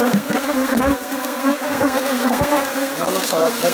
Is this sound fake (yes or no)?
yes